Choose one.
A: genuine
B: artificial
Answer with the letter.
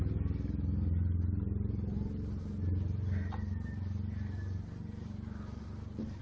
A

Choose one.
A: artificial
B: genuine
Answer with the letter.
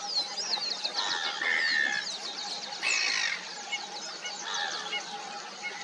B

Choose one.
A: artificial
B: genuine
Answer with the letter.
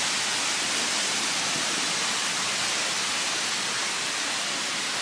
B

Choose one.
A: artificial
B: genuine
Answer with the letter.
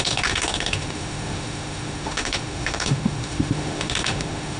A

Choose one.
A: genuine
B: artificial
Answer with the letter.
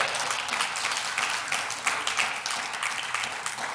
A